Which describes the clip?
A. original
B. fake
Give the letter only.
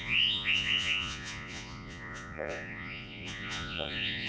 B